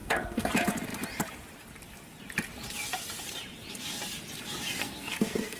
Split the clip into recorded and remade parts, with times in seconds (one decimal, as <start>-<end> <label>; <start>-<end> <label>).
0.0-0.5 remade; 0.5-4.8 recorded; 4.8-5.6 remade